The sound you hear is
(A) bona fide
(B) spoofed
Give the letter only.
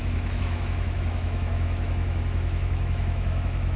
B